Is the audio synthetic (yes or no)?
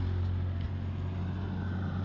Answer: no